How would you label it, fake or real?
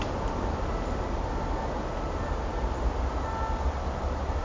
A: real